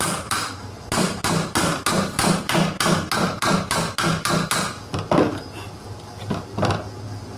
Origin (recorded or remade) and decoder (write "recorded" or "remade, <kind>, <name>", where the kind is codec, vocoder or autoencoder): recorded